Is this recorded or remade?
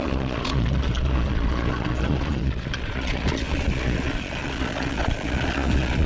remade